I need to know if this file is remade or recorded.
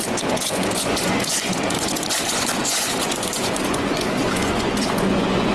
remade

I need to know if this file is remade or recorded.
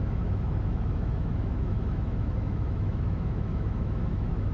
remade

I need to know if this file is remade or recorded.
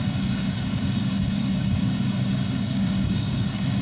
remade